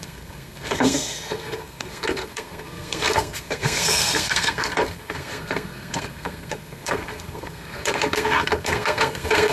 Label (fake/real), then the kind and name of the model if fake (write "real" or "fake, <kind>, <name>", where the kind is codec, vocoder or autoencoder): fake, codec, SNAC